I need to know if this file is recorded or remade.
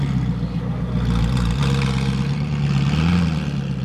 recorded